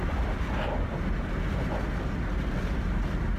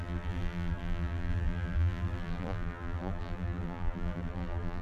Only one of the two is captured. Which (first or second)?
first